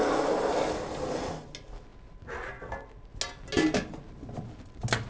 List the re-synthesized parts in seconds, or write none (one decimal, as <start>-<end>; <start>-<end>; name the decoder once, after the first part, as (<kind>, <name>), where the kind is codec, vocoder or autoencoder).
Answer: none